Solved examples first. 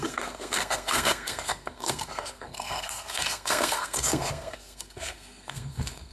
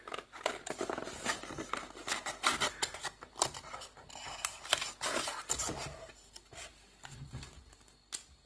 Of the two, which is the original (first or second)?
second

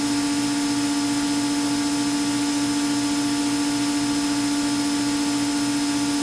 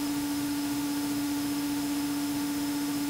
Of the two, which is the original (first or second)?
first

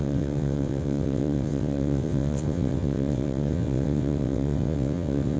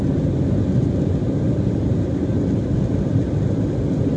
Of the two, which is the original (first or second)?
second